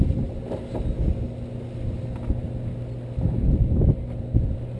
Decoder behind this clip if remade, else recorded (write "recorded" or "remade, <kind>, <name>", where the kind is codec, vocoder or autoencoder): recorded